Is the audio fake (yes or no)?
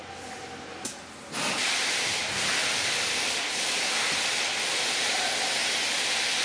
no